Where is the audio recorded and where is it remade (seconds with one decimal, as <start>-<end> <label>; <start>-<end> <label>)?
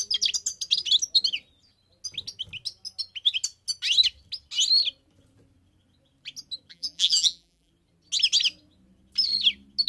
0.0-6.7 recorded; 6.7-7.7 remade; 7.7-9.9 recorded